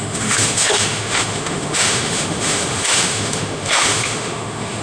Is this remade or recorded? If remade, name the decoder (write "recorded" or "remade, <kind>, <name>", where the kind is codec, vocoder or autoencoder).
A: remade, autoencoder, DAC-VAE